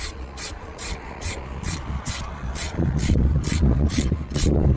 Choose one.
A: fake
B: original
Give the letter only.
A